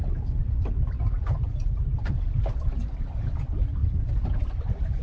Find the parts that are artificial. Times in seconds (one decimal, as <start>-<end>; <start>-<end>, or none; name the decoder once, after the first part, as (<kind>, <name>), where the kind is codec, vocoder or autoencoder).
3.8-4.6 (vocoder, BigVGAN v2)